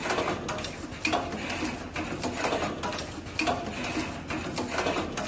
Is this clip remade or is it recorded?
recorded